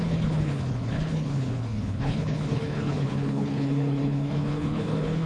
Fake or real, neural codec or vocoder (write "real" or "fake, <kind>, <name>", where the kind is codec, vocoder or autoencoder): fake, codec, HILCodec